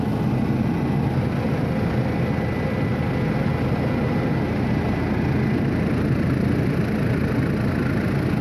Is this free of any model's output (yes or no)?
yes